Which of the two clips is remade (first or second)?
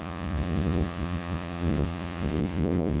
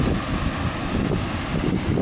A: first